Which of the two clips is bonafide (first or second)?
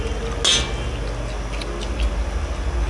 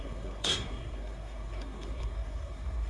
first